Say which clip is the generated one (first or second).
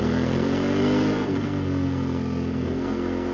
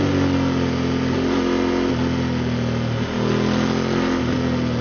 first